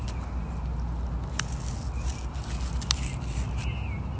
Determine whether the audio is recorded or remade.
recorded